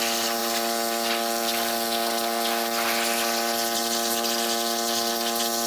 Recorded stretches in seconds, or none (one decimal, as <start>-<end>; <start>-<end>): 0.0-5.7